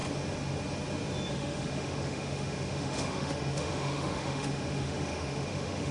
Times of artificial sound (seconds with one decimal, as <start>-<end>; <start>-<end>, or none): 1.3-5.9